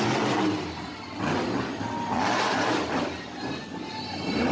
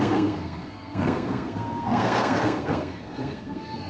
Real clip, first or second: first